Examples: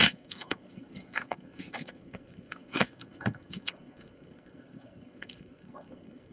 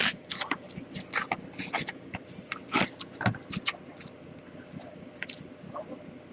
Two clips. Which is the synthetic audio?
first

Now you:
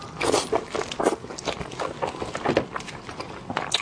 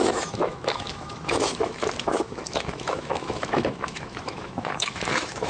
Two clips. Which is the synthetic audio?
second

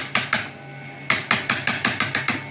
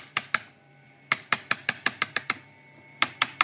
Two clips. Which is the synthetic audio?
second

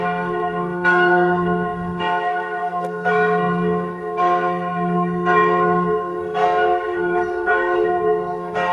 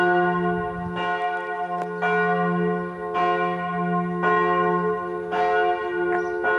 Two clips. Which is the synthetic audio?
first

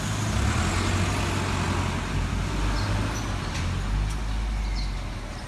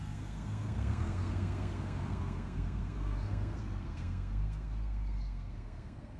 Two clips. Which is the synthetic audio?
second